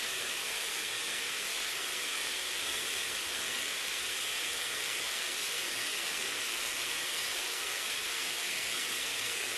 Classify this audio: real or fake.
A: fake